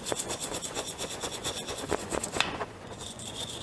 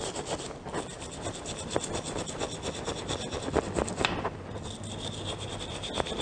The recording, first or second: second